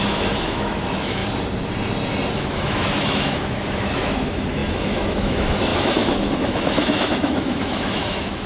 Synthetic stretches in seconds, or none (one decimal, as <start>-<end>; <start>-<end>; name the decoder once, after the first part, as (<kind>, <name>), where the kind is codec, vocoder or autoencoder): 0.0-1.2 (autoencoder, DAC-VAE); 2.3-8.5